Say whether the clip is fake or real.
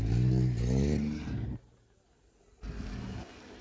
real